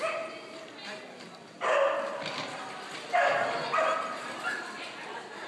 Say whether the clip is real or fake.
real